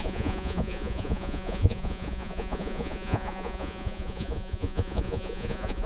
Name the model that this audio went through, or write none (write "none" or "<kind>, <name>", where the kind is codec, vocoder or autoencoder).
vocoder, Vocos